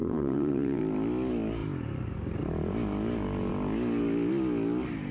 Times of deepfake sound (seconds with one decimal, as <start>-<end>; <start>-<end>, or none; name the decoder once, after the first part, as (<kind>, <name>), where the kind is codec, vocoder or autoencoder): 0.0-0.8 (vocoder, WaveNeXt)